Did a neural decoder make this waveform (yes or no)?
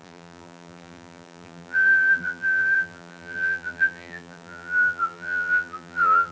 yes